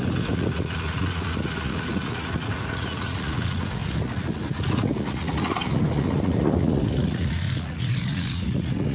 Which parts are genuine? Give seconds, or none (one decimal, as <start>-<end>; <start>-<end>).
none